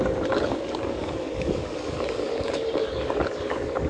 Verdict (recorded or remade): remade